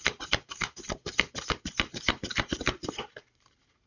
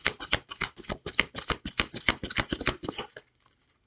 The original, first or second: second